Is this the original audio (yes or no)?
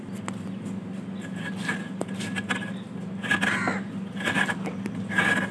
yes